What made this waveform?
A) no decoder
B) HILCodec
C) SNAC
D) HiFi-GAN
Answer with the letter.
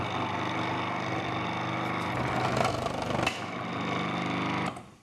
A